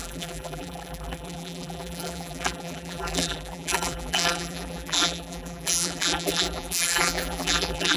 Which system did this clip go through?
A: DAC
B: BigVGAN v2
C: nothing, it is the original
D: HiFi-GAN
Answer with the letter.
B